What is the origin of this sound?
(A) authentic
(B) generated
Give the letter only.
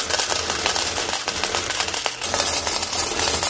A